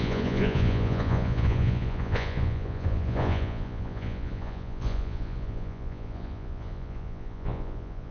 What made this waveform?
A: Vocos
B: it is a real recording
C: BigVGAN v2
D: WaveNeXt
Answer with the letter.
A